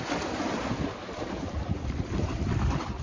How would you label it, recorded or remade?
remade